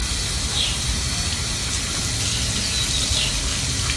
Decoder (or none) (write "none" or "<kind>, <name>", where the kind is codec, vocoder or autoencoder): none